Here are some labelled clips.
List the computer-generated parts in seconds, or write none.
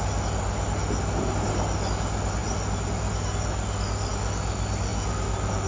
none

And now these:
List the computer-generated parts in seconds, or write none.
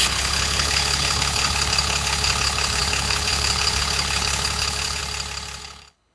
0.0-5.0 (codec, HILCodec); 5.6-6.1